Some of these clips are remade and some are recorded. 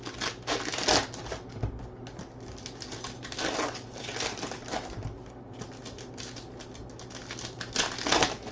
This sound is recorded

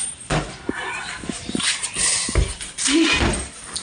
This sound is recorded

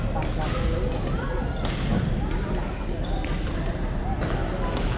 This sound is recorded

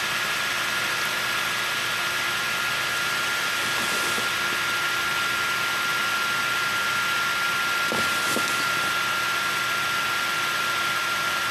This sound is recorded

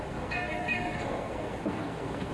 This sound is remade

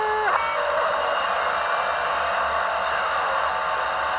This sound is recorded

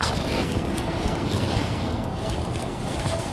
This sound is remade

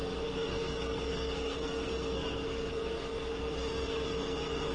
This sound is remade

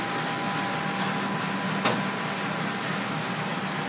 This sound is recorded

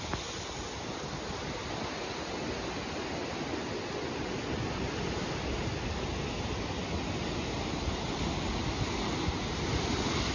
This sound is recorded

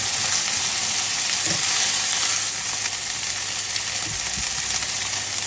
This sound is recorded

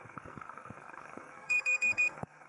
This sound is remade